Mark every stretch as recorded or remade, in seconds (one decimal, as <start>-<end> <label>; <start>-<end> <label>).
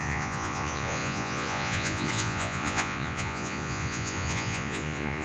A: 0.0-5.2 remade